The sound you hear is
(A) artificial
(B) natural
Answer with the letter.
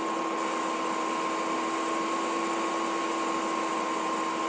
B